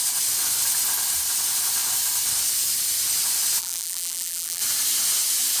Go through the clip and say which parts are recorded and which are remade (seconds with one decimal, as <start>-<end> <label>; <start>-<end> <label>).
0.0-3.6 recorded; 3.6-4.6 remade; 4.6-5.6 recorded